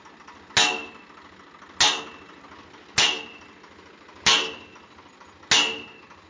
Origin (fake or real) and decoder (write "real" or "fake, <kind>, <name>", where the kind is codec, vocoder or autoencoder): real